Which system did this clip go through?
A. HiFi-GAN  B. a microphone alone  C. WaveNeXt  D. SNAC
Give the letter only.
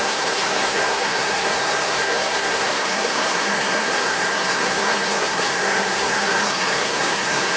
D